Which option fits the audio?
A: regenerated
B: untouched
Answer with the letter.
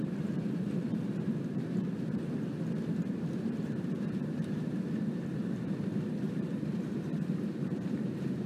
A